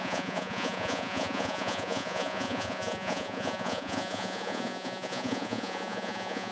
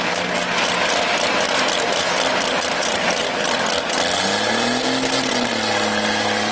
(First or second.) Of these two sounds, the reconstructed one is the first